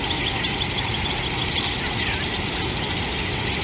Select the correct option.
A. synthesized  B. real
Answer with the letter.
B